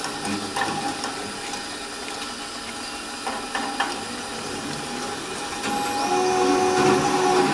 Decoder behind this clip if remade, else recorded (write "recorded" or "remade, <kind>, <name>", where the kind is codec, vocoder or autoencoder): recorded